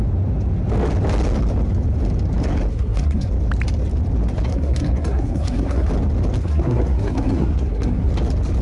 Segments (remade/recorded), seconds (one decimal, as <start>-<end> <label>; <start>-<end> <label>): 0.0-2.7 recorded; 2.7-3.3 remade; 3.3-4.5 recorded; 4.5-5.9 remade; 5.9-6.4 recorded; 6.4-8.1 remade; 8.1-8.6 recorded